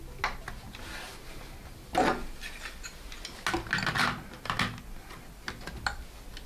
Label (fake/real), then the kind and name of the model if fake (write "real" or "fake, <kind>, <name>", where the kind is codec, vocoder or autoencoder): real